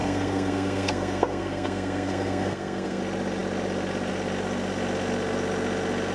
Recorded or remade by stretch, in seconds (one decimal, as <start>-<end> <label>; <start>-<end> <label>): 0.0-3.0 remade; 3.0-6.1 recorded